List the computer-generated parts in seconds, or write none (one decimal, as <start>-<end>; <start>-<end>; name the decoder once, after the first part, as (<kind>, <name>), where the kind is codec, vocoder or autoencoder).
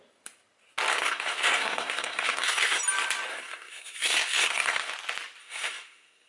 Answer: 0.9-2.8 (codec, SNAC); 3.3-4.9; 5.4-6.3